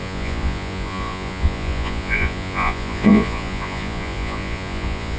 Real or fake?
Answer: fake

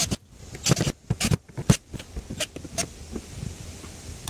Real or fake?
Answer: real